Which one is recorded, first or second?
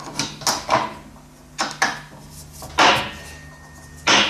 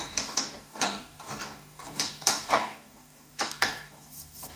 first